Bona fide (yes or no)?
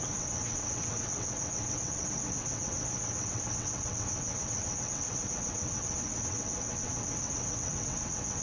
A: no